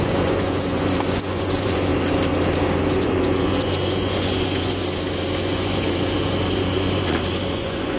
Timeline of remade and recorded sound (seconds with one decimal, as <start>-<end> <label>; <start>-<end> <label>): 0.0-1.9 remade; 1.9-2.9 recorded; 2.9-4.8 remade; 4.8-5.4 recorded; 5.4-8.0 remade